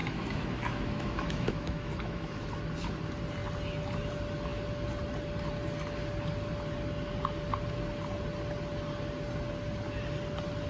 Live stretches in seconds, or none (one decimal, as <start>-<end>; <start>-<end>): 2.6-10.7